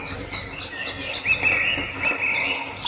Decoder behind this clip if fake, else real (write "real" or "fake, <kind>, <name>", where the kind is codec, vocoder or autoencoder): real